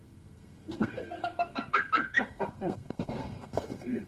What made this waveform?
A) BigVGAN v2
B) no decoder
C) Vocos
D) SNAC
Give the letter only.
D